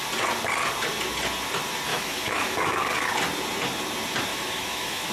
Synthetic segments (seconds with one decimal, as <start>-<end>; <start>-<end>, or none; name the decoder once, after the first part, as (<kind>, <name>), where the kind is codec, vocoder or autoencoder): 1.9-2.8 (autoencoder, DAC-VAE); 4.3-5.1